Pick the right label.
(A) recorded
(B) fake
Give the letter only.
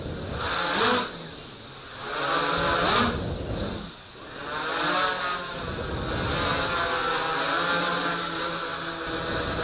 A